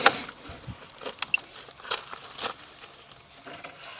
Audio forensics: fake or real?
real